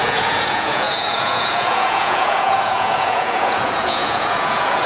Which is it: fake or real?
fake